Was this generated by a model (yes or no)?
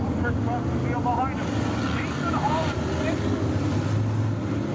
no